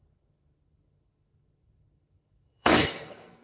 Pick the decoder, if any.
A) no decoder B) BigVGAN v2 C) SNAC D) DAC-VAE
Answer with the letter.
C